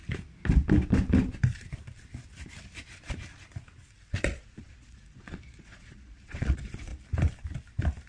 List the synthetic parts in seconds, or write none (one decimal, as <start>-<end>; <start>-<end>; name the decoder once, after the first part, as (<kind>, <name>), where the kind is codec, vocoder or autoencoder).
4.1-6.9 (vocoder, Vocos)